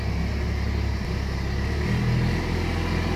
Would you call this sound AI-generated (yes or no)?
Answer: no